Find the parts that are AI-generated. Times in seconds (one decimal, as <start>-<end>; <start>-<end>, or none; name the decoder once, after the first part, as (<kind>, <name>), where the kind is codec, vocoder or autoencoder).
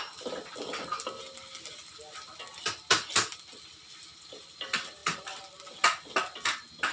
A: none